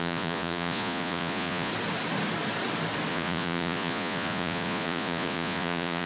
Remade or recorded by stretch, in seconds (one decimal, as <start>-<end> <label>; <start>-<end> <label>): 0.0-1.7 remade; 1.7-3.1 recorded; 3.1-6.1 remade